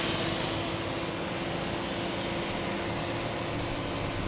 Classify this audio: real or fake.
real